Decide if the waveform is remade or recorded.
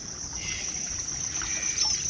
recorded